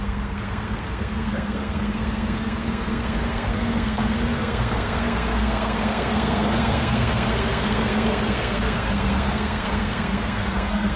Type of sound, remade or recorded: remade